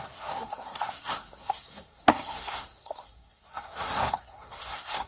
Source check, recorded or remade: remade